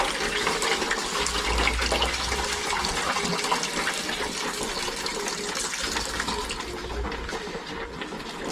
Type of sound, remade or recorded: recorded